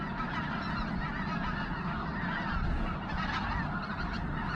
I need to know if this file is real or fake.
real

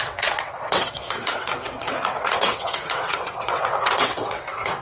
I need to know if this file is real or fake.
fake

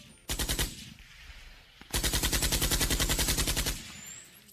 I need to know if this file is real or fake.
real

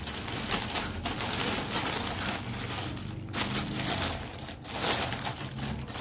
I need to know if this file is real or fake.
real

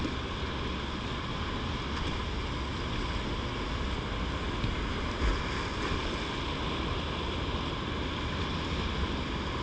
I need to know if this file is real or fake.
real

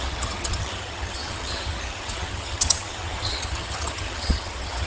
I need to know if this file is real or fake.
fake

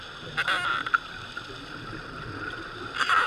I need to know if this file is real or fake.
real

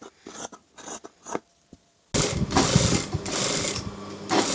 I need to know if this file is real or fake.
real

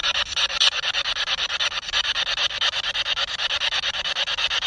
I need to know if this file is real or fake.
real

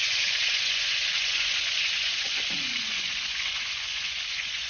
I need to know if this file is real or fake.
fake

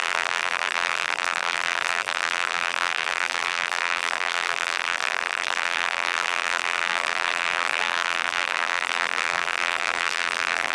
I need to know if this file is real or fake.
fake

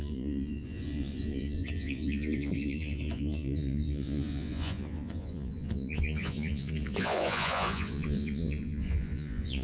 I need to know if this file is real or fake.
fake